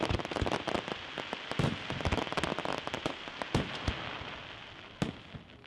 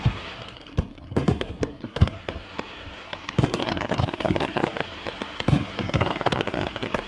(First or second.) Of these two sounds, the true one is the first